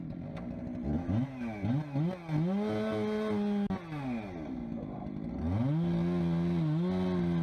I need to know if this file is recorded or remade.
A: recorded